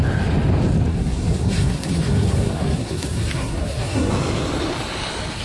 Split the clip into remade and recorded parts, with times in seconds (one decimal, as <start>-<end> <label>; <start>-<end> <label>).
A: 0.0-0.9 recorded; 0.9-4.1 remade; 4.1-5.4 recorded